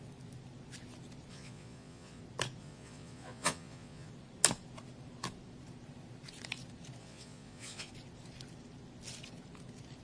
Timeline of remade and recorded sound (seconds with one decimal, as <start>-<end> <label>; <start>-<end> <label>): 0.0-1.3 recorded; 1.3-2.2 remade; 2.2-2.6 recorded; 2.6-4.1 remade; 4.1-7.0 recorded; 7.0-7.9 remade; 7.9-10.0 recorded